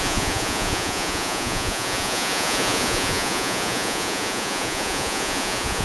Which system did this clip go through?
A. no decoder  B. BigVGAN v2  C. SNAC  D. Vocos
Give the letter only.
D